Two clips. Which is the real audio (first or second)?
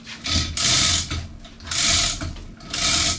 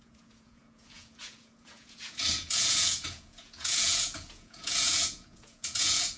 first